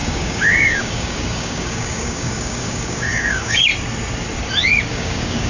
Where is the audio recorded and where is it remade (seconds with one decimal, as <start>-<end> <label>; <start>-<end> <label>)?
0.0-3.7 remade; 3.7-4.9 recorded; 4.9-5.5 remade